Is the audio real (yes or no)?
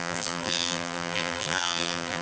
no